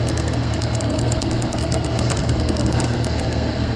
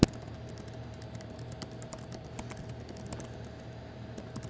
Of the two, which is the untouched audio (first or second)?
second